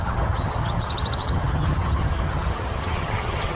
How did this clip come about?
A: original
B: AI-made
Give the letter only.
B